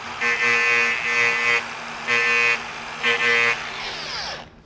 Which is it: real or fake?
real